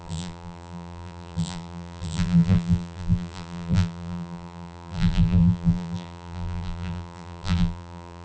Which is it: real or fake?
fake